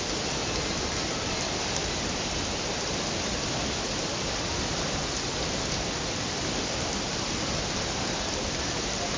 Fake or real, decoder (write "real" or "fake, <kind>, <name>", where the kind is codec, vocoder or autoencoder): real